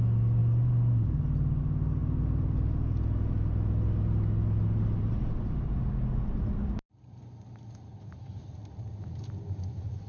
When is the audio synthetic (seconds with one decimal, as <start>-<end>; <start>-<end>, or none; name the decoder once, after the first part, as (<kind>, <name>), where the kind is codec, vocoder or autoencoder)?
none